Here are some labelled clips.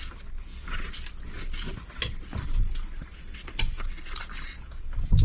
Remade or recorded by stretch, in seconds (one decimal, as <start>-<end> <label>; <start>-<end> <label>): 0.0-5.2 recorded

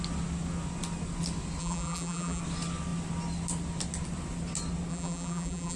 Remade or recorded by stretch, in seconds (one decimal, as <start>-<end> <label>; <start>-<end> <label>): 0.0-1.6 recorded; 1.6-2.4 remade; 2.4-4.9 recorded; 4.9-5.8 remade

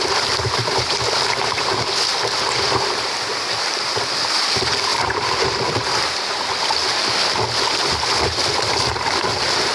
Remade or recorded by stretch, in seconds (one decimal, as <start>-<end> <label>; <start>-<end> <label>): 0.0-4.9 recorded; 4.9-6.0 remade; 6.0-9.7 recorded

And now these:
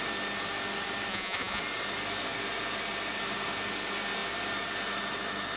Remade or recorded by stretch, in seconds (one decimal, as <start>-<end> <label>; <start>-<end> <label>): 0.0-1.1 recorded; 1.1-1.6 remade; 1.6-5.6 recorded